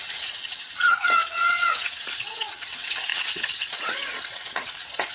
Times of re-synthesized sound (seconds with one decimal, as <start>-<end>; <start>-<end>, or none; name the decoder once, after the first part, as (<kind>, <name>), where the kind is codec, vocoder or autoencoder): 0.0-5.1 (vocoder, WaveNeXt)